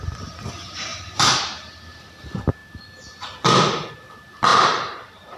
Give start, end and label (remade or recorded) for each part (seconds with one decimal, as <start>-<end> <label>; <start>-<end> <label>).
0.0-0.9 recorded; 0.9-2.1 remade; 2.1-4.5 recorded; 4.5-5.4 remade